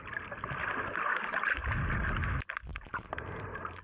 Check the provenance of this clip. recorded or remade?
recorded